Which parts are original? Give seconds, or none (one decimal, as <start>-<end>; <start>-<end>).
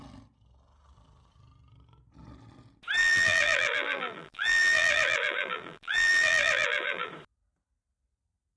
0.0-3.0; 7.1-8.6